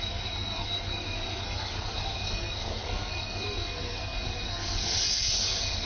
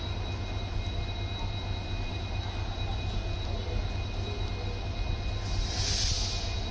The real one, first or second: second